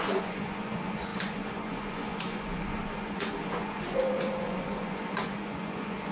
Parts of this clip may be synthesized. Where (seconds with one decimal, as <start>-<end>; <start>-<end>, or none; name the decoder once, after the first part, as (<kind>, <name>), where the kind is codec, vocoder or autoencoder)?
0.0-6.1 (vocoder, Vocos)